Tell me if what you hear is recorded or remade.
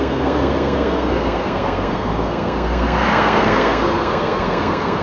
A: remade